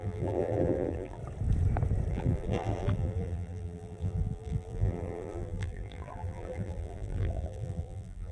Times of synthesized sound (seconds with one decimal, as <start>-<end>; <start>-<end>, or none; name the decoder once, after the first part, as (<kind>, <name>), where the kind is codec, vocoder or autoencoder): 0.0-1.2 (vocoder, BigVGAN v2); 2.1-8.3